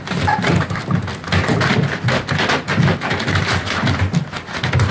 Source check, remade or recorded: recorded